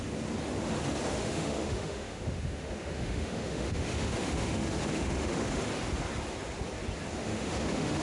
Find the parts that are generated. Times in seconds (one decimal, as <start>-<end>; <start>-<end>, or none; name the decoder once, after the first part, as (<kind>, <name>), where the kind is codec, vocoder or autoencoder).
1.2-5.6 (autoencoder, DAC-VAE); 7.2-8.0